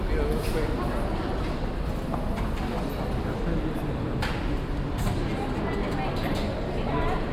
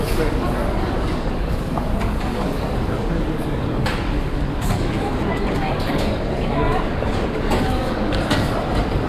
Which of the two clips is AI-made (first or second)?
second